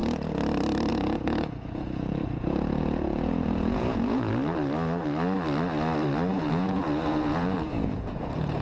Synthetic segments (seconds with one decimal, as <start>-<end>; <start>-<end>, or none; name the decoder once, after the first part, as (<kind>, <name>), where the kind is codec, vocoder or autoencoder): 0.9-4.3 (vocoder, Vocos); 6.3-8.6